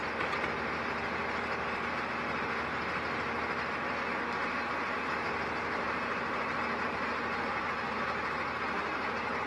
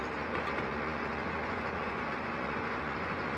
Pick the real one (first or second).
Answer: first